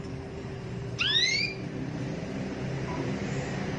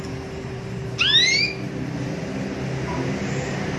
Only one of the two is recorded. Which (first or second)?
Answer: second